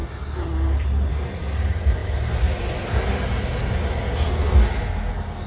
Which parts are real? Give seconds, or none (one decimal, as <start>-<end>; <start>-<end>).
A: 1.1-5.5